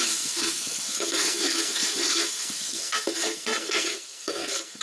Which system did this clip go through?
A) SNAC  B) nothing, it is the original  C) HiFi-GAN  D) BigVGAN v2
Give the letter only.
A